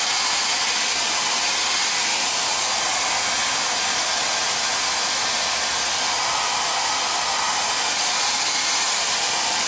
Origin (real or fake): real